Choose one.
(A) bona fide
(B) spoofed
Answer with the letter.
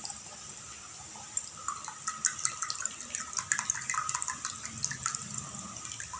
A